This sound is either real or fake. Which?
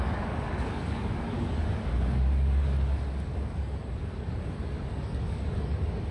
fake